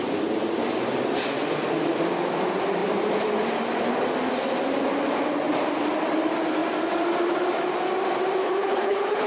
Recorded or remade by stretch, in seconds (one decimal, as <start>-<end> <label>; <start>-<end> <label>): 0.0-8.4 recorded; 8.4-9.3 remade